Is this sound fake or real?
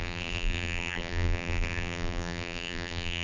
fake